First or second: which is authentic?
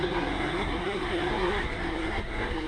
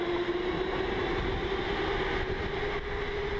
second